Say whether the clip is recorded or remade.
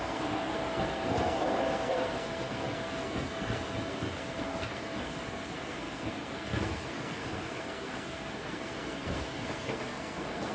remade